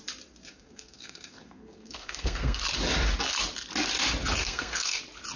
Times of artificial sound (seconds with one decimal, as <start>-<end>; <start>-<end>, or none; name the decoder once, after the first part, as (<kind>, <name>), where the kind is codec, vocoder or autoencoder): 0.5-2.6 (codec, SNAC); 4.4-5.0